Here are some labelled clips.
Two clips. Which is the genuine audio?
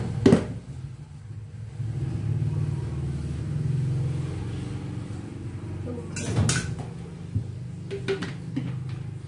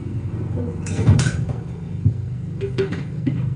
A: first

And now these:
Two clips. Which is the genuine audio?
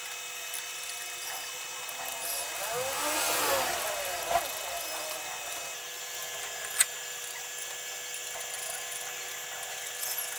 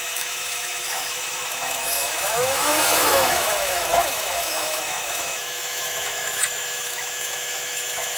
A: first